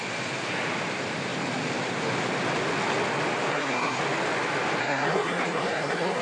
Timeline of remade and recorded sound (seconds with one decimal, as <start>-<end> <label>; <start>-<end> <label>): 0.0-3.5 recorded; 3.5-4.0 remade; 4.0-4.8 recorded; 4.8-6.2 remade